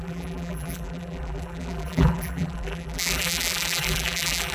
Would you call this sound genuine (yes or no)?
no